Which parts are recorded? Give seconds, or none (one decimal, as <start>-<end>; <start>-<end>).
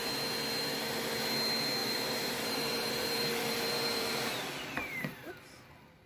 0.0-1.8; 5.3-6.1